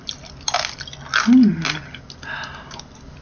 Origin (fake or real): real